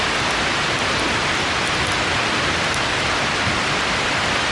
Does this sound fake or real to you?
real